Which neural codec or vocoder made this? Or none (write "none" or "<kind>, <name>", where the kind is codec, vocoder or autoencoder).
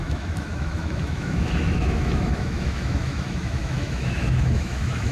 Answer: autoencoder, DAC-VAE